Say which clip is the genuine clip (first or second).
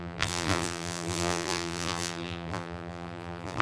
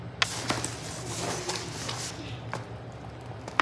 second